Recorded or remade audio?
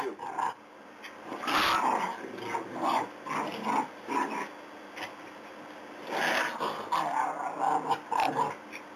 recorded